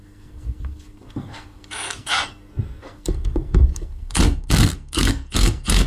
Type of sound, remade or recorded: remade